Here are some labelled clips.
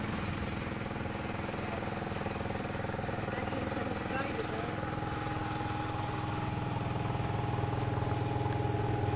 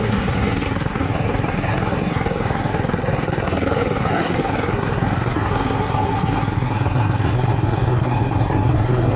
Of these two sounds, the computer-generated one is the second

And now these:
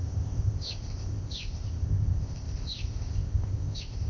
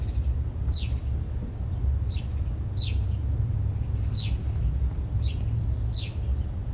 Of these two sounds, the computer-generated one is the first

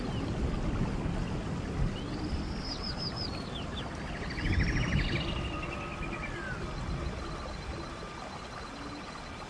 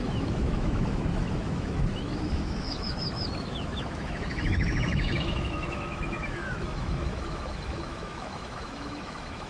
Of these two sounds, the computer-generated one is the second